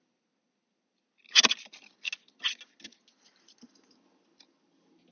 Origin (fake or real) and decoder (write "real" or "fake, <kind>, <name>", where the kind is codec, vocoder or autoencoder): real